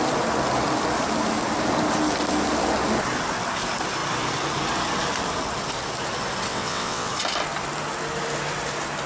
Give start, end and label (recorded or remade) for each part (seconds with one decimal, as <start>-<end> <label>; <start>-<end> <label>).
0.0-6.5 recorded; 6.5-7.1 remade; 7.1-9.1 recorded